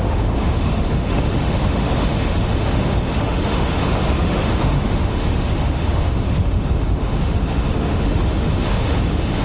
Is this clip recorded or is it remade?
remade